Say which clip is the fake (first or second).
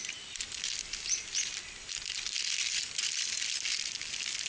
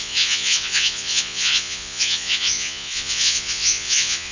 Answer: second